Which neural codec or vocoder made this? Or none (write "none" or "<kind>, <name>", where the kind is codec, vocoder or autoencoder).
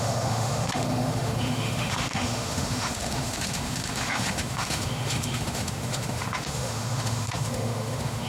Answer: autoencoder, DAC-VAE